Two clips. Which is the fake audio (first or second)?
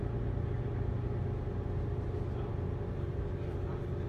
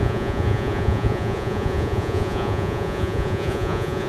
second